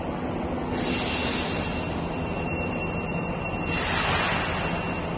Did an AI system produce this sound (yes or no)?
no